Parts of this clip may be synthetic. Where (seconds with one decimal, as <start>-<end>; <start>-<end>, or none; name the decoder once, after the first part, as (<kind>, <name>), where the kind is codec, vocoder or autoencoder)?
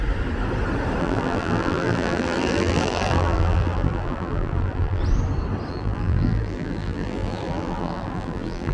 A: 1.0-5.0 (vocoder, BigVGAN v2); 5.7-8.7